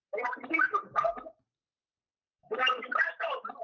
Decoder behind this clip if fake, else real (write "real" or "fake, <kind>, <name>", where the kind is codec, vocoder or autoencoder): fake, vocoder, BigVGAN v2